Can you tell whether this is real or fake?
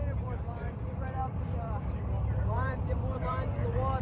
fake